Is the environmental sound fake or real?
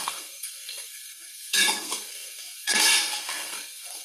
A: fake